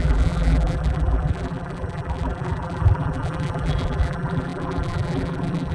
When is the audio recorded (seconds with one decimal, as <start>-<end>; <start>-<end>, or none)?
none